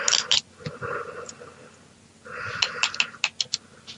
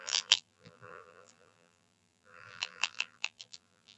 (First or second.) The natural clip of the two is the first